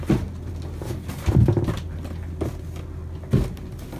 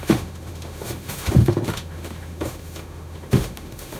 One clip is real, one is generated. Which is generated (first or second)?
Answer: second